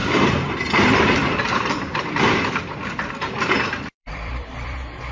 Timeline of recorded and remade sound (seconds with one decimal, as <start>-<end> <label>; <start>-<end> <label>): 0.0-5.1 remade